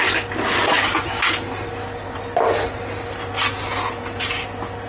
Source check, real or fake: real